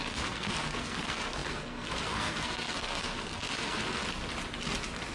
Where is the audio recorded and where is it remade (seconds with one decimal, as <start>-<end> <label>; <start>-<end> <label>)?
0.0-4.0 remade; 4.0-5.1 recorded